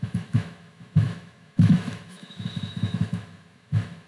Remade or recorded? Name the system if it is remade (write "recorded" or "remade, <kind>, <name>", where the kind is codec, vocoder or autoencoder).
remade, autoencoder, DAC-VAE